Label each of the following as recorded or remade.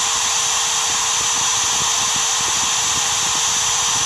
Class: recorded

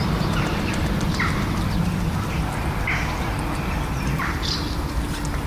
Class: recorded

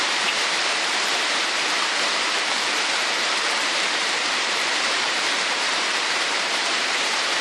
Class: remade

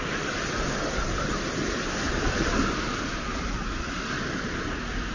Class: recorded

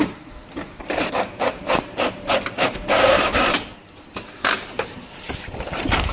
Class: remade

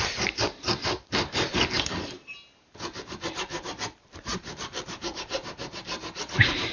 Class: remade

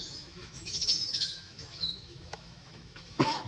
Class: remade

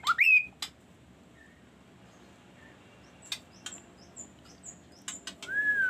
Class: recorded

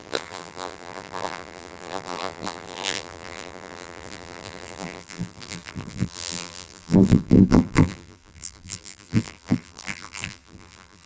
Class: remade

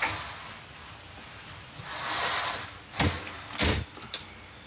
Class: recorded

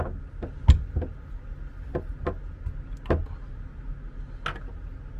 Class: recorded